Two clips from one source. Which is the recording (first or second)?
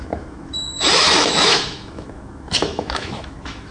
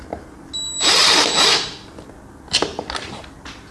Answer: second